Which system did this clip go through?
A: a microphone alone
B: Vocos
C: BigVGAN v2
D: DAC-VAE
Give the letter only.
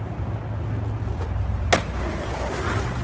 A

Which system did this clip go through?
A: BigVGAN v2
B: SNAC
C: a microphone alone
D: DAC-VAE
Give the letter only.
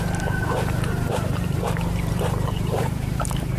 A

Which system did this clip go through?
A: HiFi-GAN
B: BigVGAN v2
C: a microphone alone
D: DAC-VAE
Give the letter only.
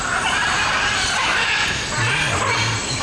C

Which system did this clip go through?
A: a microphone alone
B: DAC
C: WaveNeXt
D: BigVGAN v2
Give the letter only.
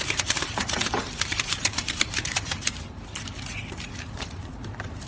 D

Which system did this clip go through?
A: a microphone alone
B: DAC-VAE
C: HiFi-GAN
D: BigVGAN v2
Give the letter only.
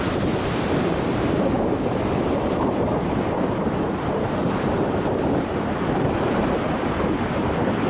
D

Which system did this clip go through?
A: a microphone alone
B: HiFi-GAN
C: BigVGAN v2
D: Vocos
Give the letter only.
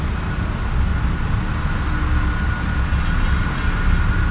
A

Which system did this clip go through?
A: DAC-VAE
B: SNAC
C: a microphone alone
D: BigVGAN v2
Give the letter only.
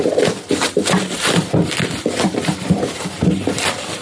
D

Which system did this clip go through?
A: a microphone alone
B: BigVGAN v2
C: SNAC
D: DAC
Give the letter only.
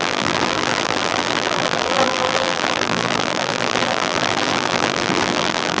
B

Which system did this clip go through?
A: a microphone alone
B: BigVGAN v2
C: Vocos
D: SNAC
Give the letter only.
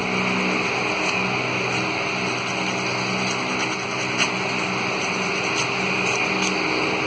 A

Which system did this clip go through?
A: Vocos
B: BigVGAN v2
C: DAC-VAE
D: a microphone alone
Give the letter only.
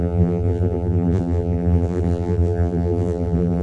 B